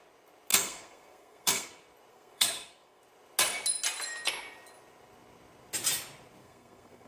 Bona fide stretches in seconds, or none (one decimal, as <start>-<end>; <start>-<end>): 0.0-0.5; 1.7-2.1; 3.0-6.4